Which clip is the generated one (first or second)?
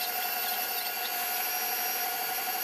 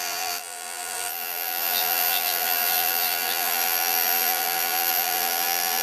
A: second